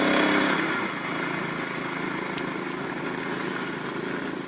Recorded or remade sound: recorded